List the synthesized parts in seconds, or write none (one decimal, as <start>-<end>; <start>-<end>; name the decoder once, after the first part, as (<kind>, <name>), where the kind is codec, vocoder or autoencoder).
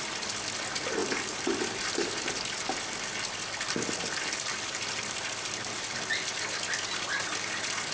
none